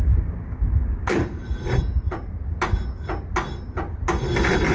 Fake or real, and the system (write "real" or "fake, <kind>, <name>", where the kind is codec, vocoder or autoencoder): real